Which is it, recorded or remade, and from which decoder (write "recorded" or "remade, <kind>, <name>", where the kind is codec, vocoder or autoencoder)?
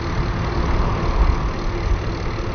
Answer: recorded